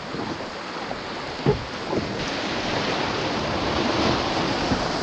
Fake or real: real